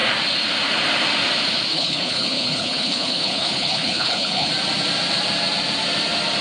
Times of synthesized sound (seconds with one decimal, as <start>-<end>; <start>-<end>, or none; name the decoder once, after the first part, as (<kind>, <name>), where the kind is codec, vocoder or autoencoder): 1.7-4.5 (codec, HILCodec)